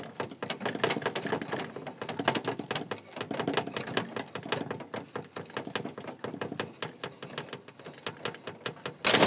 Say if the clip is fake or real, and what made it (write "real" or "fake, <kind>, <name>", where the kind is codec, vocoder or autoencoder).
real